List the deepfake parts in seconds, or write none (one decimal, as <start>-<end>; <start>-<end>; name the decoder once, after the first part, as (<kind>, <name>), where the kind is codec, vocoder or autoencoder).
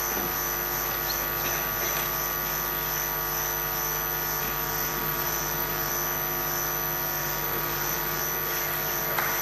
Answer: 4.4-5.9 (vocoder, BigVGAN v2); 7.2-8.2